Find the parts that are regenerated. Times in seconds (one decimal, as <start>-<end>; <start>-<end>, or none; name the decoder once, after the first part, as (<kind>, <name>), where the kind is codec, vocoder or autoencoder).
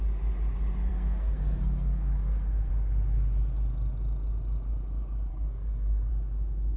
0.9-2.7 (codec, SNAC); 5.3-6.1